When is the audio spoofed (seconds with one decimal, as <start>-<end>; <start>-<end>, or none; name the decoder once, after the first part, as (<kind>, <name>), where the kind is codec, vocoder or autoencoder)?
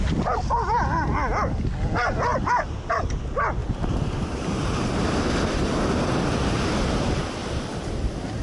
3.6-5.4 (vocoder, BigVGAN v2); 7.4-8.4